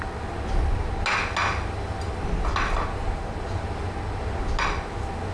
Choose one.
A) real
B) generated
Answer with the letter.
A